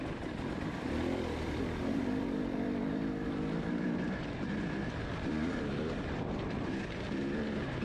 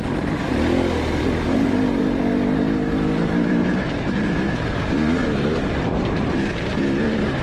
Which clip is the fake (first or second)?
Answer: first